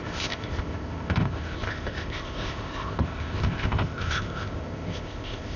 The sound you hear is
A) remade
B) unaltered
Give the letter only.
A